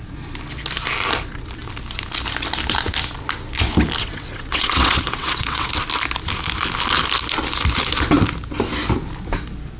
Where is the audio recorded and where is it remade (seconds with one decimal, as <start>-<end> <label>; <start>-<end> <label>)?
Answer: 0.0-4.0 recorded; 4.0-5.7 remade; 5.7-9.8 recorded